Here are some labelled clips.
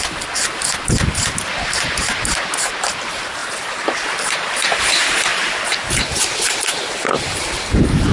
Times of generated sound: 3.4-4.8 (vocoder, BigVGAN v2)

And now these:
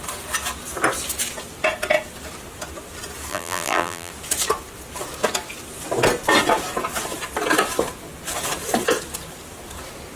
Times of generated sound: 3.3-4.1 (vocoder, BigVGAN v2)

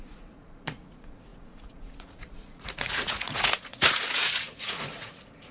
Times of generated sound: 0.0-5.5 (vocoder, Vocos)

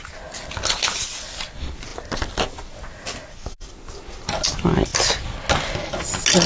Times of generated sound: none

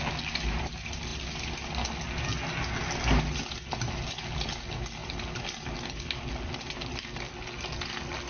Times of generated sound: none

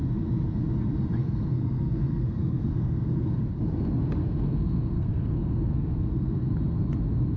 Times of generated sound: 1.2-3.5 (codec, SNAC); 4.2-6.5